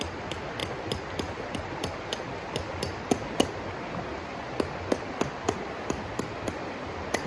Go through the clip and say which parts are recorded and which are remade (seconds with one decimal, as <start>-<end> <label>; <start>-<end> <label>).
0.0-7.3 recorded

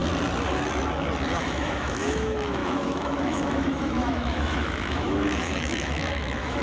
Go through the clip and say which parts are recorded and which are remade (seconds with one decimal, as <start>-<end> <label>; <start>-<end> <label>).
0.0-1.4 recorded; 1.4-6.6 remade

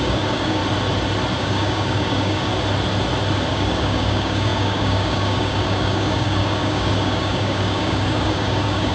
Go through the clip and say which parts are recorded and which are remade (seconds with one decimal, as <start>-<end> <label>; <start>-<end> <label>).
0.0-0.6 remade; 0.6-1.4 recorded; 1.4-2.5 remade; 2.5-3.5 recorded; 3.5-8.9 remade

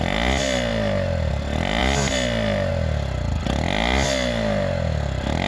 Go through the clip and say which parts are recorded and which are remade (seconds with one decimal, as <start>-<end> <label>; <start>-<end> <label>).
0.0-5.5 recorded

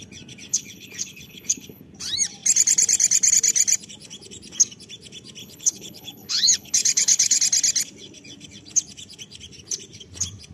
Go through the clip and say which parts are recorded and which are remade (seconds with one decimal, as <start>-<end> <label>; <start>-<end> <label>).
0.0-0.5 recorded; 0.5-1.8 remade; 1.8-5.4 recorded; 5.4-7.4 remade; 7.4-10.5 recorded